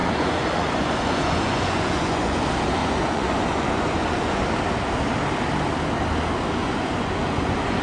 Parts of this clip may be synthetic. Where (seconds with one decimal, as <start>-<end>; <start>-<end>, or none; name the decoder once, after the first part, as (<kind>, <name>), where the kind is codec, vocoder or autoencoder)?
0.0-2.4 (vocoder, Vocos); 2.8-4.4; 6.6-7.8